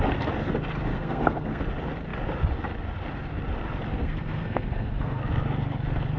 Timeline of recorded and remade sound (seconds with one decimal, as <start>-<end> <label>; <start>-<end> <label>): 0.0-0.9 recorded; 0.9-1.6 remade; 1.6-3.9 recorded; 3.9-5.2 remade; 5.2-6.2 recorded